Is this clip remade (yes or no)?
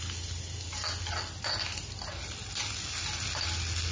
no